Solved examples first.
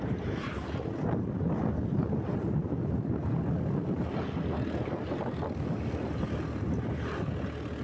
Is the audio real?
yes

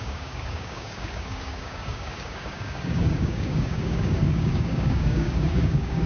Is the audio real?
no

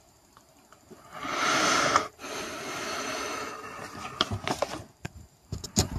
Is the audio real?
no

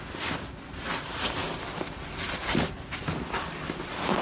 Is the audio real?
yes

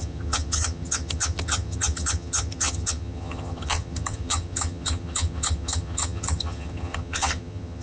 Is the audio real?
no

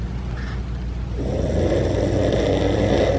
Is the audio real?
yes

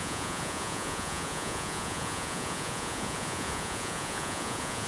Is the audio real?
no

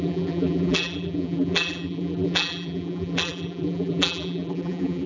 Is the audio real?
no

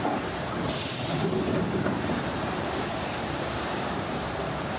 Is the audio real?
no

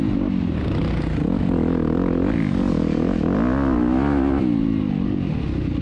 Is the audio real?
yes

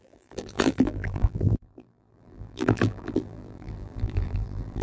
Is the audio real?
no